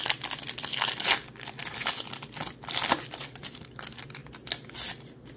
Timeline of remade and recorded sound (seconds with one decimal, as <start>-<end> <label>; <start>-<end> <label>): 0.0-5.4 recorded